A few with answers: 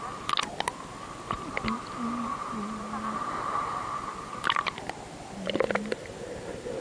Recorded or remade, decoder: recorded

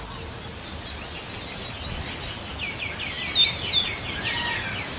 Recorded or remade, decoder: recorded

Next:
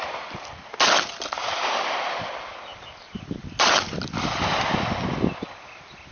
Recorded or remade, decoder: recorded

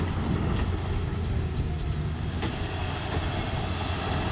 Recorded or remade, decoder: recorded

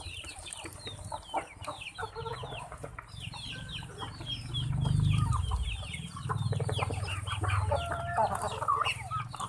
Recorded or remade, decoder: remade, vocoder, BigVGAN v2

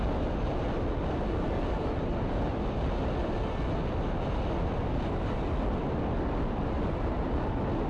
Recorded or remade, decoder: recorded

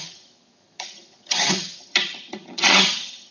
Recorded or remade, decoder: remade, vocoder, HiFi-GAN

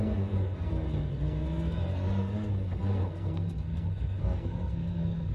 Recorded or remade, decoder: remade, codec, SNAC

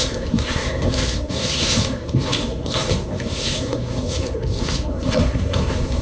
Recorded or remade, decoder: remade, codec, SNAC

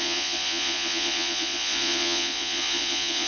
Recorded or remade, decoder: remade, vocoder, Vocos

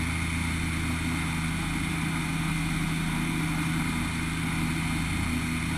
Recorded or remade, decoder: recorded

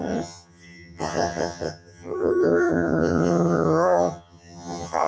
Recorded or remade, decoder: remade, vocoder, HiFi-GAN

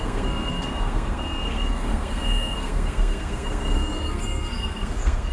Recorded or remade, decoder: remade, codec, SNAC